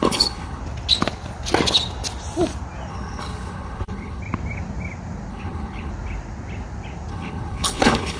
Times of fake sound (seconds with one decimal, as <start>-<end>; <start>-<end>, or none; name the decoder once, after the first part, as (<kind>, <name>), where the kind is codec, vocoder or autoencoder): 0.0-0.6 (codec, HILCodec); 2.9-4.2; 5.3-5.9; 7.1-8.2